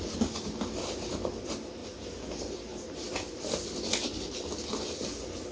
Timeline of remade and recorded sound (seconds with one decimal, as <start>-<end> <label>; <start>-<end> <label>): 0.0-5.5 recorded